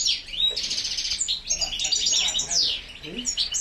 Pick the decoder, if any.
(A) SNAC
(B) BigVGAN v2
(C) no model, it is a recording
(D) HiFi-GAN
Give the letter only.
C